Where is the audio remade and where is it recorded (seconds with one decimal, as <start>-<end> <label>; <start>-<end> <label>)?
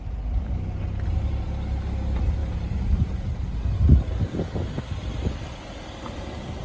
0.0-6.6 recorded